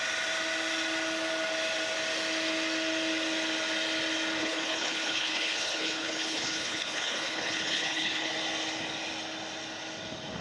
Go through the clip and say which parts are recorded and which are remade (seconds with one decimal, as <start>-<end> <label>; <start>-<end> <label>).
0.0-4.4 recorded; 4.4-8.3 remade; 8.3-10.4 recorded

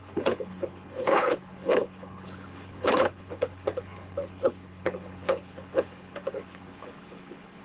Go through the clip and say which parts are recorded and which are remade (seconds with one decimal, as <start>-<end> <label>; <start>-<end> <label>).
0.0-7.6 remade

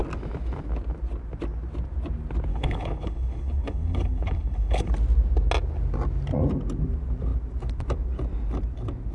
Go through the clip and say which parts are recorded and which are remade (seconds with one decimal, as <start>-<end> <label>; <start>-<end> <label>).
0.0-2.5 recorded; 2.5-4.9 remade; 4.9-9.1 recorded

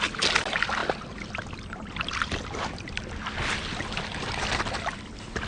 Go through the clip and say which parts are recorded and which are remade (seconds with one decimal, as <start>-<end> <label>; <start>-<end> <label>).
0.0-5.5 recorded